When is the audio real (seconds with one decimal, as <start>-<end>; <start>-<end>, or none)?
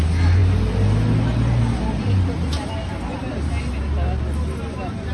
0.0-5.1